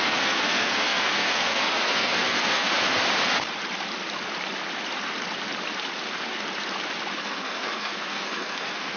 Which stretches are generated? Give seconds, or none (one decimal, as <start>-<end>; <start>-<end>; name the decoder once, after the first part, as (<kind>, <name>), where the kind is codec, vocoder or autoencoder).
0.0-2.7 (codec, SNAC); 7.2-9.0